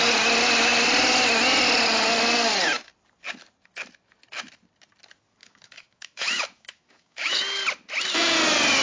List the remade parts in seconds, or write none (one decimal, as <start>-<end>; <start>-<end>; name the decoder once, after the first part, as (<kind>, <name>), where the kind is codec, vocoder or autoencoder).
5.4-7.4 (autoencoder, DAC-VAE)

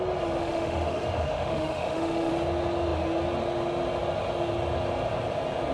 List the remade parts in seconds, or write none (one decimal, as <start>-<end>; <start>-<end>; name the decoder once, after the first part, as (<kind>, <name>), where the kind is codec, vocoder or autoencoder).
0.4-2.3 (autoencoder, DAC-VAE)

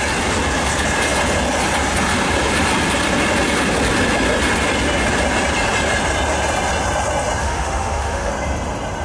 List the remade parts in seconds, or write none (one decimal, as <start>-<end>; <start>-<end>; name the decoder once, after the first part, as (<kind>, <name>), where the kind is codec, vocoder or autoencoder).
7.4-8.3 (autoencoder, DAC-VAE)

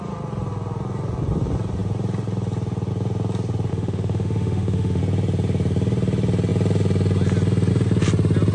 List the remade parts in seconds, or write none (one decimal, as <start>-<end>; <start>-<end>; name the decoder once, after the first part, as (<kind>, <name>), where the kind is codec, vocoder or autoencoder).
3.7-5.0 (autoencoder, DAC-VAE)

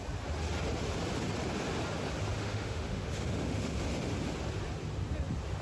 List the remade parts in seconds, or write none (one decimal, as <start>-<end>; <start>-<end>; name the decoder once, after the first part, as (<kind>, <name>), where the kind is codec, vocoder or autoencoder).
2.3-3.7 (autoencoder, DAC-VAE)